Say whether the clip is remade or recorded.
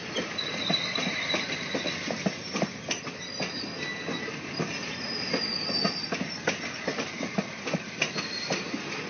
recorded